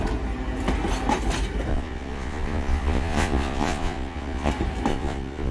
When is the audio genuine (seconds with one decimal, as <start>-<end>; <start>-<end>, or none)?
0.0-1.7; 4.5-4.9